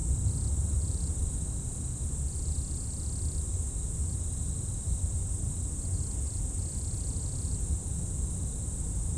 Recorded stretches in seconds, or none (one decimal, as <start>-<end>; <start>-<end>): 0.0-9.2